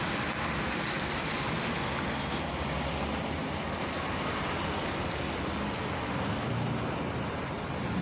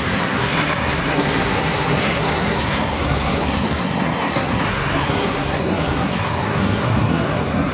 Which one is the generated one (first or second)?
second